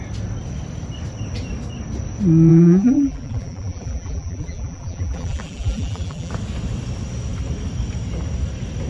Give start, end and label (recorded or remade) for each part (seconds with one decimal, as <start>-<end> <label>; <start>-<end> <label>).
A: 0.0-2.5 recorded; 2.5-6.3 remade; 6.3-8.9 recorded